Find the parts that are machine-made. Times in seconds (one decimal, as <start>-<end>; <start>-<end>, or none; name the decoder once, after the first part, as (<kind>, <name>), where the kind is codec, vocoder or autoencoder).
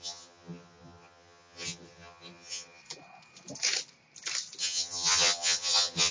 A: 0.0-2.8 (vocoder, HiFi-GAN); 4.6-6.1